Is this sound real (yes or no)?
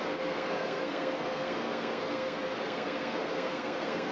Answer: no